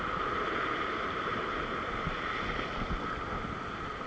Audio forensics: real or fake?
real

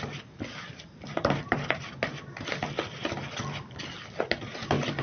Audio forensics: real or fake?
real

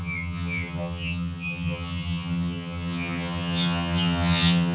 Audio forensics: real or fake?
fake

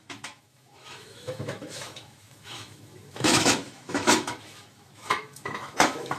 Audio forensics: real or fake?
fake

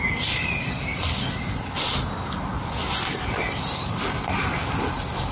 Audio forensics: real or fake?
real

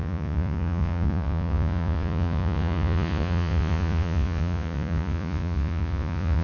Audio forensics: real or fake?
fake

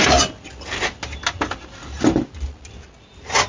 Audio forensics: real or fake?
real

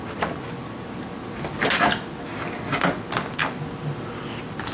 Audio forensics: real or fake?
real